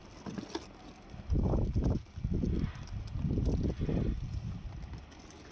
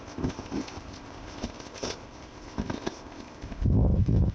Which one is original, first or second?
first